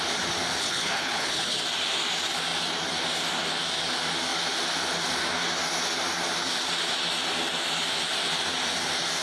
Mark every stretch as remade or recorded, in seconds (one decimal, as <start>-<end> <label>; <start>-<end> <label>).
0.0-0.6 recorded; 0.6-1.6 remade; 1.6-9.2 recorded